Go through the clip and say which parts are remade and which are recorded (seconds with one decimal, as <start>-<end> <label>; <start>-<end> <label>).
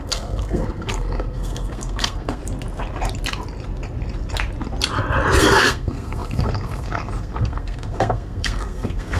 0.0-2.4 remade; 2.4-5.4 recorded; 5.4-9.2 remade